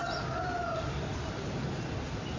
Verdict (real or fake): real